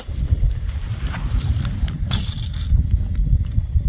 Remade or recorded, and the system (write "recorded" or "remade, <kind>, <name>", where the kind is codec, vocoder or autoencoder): recorded